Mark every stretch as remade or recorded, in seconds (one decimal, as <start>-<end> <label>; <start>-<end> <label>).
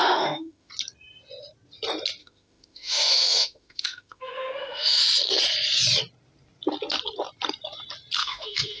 0.0-0.7 remade; 0.7-2.2 recorded; 2.2-5.0 remade; 5.0-8.2 recorded; 8.2-8.8 remade